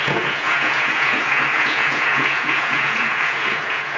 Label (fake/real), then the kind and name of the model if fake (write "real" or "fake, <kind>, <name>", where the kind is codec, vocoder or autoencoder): fake, vocoder, Vocos